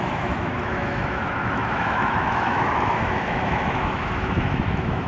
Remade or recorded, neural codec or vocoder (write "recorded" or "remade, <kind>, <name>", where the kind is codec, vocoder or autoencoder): remade, autoencoder, DAC-VAE